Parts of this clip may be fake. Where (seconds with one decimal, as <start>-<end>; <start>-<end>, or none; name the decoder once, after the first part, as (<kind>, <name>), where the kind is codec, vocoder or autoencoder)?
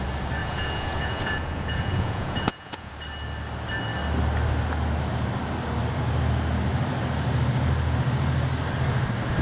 0.4-2.9 (vocoder, Vocos)